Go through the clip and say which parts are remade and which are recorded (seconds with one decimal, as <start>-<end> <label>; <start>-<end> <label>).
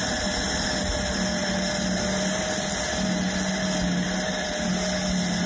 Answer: 0.0-5.5 recorded